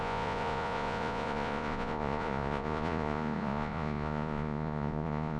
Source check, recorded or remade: remade